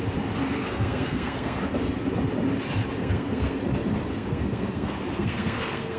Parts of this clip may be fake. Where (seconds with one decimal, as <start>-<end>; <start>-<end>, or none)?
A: 0.4-1.6; 3.0-3.6; 4.1-6.0